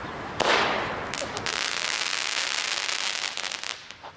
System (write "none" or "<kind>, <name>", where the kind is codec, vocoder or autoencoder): none